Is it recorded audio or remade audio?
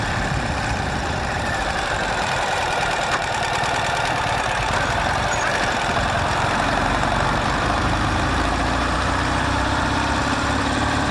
remade